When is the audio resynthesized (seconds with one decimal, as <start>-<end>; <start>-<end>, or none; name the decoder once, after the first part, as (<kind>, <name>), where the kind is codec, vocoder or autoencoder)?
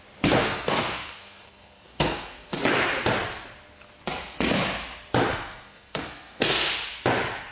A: 0.4-2.5 (codec, SNAC); 5.3-6.7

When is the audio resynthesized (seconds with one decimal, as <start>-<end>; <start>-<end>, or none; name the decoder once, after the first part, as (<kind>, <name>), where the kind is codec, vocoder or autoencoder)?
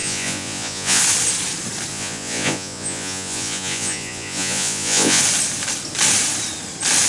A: 0.0-1.0 (vocoder, Vocos); 1.9-5.2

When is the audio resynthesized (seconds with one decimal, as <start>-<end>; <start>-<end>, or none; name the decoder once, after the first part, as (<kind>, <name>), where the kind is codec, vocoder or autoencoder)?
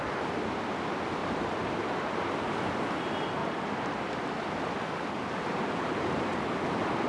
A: 1.2-2.2 (vocoder, BigVGAN v2); 3.4-5.8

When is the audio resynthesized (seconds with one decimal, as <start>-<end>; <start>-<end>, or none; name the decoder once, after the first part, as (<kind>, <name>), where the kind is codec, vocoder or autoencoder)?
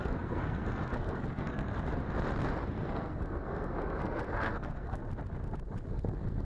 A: 0.0-1.7 (codec, SNAC); 2.7-5.0; 5.9-6.4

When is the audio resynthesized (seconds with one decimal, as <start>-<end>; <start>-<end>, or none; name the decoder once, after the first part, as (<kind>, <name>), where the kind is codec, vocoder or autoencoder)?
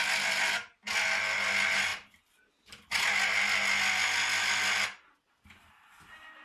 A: none